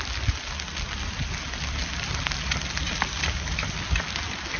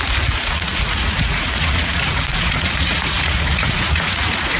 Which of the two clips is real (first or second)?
first